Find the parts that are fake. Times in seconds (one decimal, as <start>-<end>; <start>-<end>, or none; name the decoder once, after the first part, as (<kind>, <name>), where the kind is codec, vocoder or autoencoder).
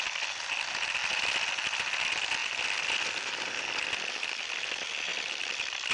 none